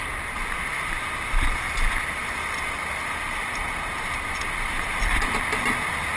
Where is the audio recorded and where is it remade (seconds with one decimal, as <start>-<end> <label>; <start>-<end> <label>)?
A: 0.0-6.2 recorded

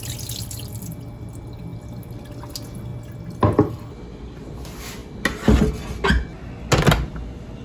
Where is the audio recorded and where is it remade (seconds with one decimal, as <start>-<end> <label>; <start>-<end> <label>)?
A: 0.0-7.6 recorded

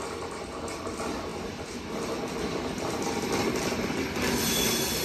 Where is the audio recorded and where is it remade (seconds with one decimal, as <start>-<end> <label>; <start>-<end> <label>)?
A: 0.0-5.0 recorded

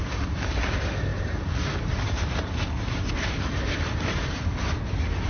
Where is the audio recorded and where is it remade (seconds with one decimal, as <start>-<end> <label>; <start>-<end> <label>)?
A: 0.0-0.5 remade; 0.5-1.1 recorded; 1.1-4.3 remade; 4.3-5.3 recorded

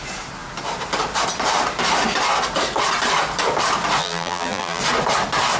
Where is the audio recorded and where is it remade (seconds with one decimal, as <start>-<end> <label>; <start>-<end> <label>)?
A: 0.0-4.0 recorded; 4.0-4.8 remade; 4.8-5.6 recorded

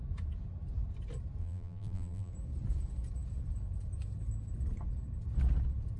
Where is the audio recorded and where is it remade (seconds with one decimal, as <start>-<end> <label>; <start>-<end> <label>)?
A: 0.0-1.4 recorded; 1.4-2.3 remade; 2.3-6.0 recorded

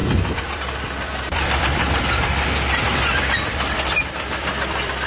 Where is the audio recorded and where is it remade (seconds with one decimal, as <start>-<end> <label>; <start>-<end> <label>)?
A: 0.0-5.1 remade